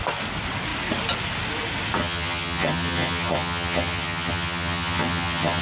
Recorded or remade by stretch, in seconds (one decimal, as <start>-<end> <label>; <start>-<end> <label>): 0.0-2.0 recorded; 2.0-5.6 remade